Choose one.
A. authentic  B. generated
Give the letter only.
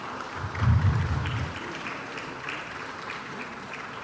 B